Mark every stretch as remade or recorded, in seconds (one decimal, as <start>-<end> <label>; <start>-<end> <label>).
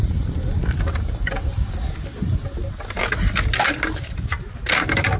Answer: 0.0-5.2 recorded